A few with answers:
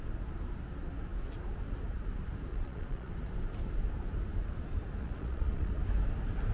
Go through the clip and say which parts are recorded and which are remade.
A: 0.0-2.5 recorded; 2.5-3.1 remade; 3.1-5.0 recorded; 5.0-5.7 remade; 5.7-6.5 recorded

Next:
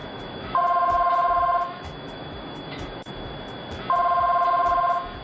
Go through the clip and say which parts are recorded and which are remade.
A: 0.0-3.1 remade; 3.1-5.2 recorded

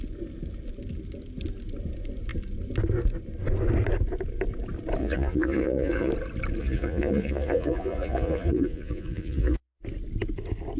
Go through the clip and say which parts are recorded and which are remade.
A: 0.0-5.0 recorded; 5.0-6.1 remade; 6.1-6.6 recorded; 6.6-9.8 remade; 9.8-10.8 recorded

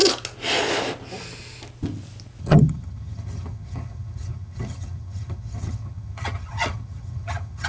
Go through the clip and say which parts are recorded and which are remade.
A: 0.0-2.4 recorded; 2.4-7.7 remade